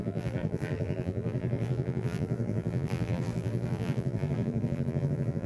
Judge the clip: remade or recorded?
remade